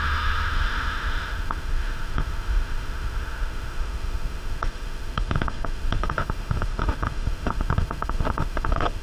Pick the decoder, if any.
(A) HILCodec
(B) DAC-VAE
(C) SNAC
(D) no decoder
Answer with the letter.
B